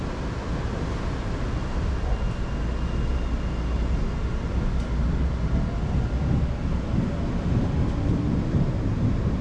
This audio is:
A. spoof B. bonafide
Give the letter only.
B